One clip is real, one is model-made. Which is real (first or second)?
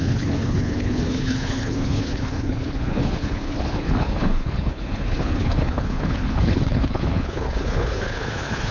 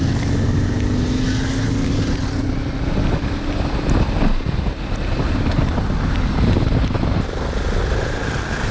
second